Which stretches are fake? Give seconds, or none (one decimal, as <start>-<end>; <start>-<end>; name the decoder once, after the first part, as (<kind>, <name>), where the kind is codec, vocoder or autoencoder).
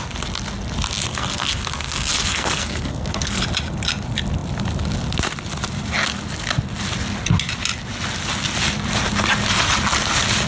1.1-3.4 (codec, SNAC)